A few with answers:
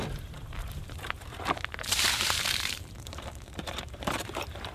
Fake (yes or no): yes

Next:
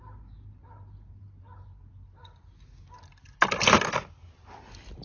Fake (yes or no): no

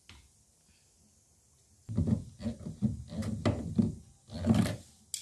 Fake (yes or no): no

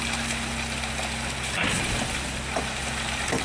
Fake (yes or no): no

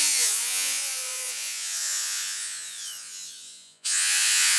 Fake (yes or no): yes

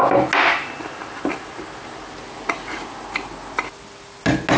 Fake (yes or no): no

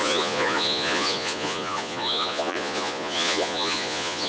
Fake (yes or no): yes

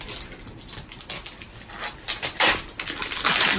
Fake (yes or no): no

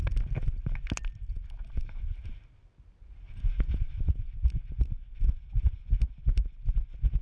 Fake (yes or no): no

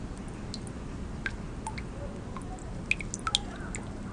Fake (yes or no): no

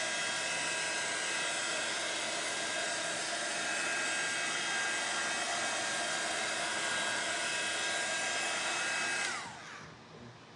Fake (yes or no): no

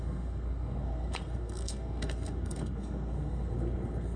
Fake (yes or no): yes